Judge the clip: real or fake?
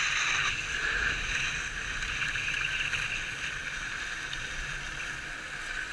real